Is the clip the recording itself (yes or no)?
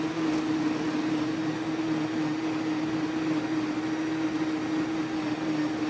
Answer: yes